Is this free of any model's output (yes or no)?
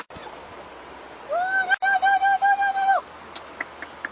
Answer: yes